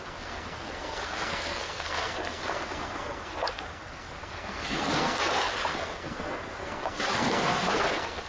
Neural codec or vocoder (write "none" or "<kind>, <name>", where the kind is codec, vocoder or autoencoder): codec, SNAC